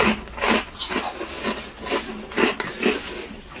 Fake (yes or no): no